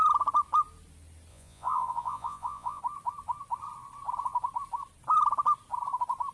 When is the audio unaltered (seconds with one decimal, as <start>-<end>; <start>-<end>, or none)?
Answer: 0.0-1.3; 2.8-6.3